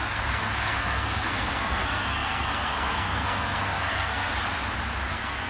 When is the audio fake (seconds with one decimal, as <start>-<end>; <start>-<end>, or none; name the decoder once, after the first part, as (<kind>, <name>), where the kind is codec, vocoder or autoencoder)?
0.0-4.3 (codec, SNAC); 5.1-5.5